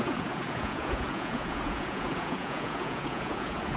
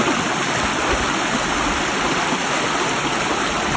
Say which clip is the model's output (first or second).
first